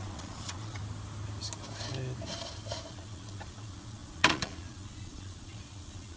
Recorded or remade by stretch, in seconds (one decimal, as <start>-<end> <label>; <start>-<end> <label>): 0.0-0.8 remade; 0.8-2.9 recorded; 2.9-6.2 remade